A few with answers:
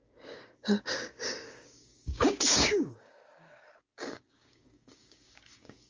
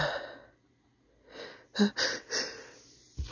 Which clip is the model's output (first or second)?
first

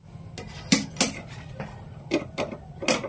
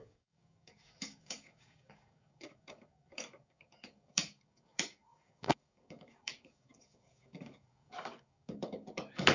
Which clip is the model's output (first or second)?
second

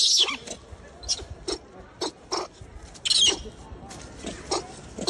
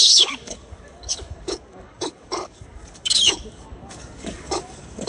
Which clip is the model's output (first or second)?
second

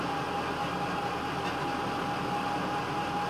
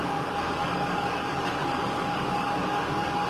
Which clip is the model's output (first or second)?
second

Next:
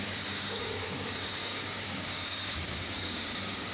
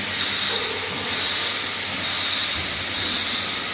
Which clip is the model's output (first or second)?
first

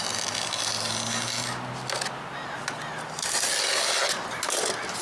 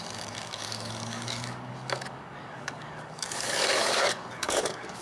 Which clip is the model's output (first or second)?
second